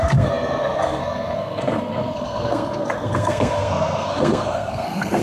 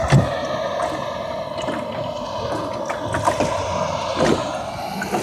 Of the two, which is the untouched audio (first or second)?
second